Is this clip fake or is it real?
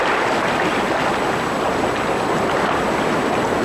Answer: real